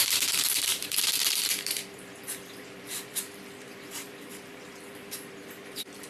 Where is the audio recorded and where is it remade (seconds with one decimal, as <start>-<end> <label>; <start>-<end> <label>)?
0.0-6.1 remade